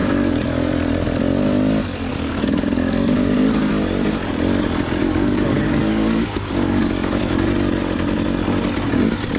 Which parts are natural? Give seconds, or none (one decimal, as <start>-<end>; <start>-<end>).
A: 0.7-2.1; 3.7-5.0; 7.3-9.4